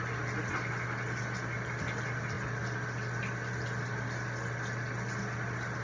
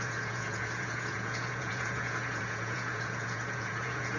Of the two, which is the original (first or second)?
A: first